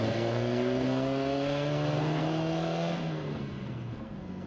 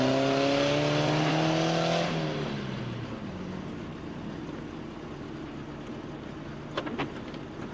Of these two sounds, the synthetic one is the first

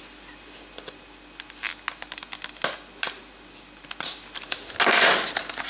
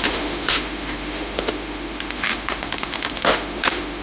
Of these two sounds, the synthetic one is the second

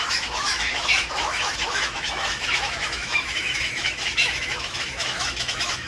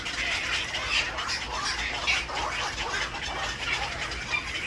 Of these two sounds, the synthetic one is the first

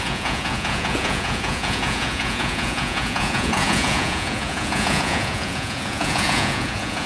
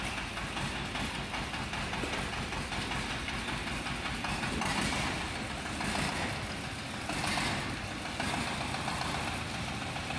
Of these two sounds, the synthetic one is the first